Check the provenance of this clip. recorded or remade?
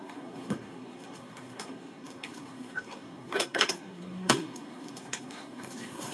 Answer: remade